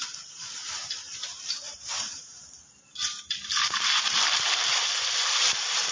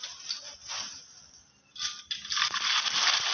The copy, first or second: first